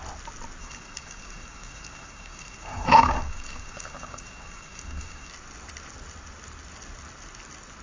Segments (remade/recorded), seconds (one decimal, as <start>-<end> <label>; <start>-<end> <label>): 0.0-0.6 recorded; 0.6-5.3 remade; 5.3-7.8 recorded